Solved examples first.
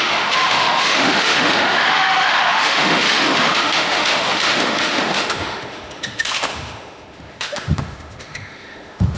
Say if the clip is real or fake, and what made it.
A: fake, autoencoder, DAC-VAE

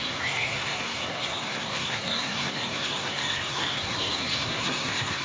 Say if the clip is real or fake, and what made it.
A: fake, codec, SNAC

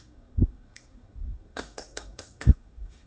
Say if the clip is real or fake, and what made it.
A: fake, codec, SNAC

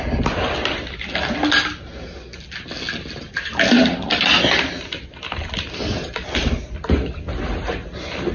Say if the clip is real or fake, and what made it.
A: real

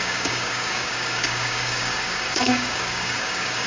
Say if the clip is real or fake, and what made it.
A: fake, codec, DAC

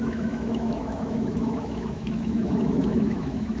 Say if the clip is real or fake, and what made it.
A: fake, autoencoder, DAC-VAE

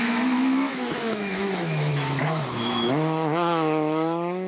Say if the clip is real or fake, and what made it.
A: fake, autoencoder, DAC-VAE